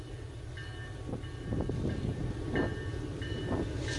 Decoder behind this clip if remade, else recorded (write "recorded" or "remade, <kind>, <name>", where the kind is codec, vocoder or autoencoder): remade, vocoder, BigVGAN v2